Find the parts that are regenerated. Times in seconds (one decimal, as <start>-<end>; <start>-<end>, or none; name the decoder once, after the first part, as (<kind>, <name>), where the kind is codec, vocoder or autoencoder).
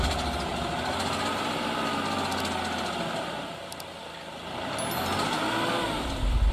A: none